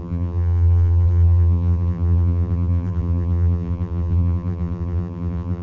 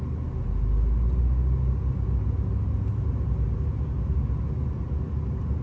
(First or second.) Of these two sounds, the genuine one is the second